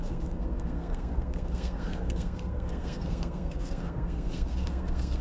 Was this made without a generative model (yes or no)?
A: no